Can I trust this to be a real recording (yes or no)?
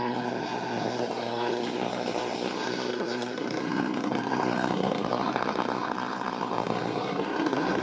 no